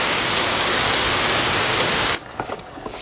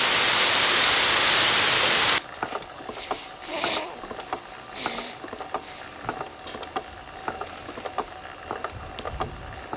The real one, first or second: second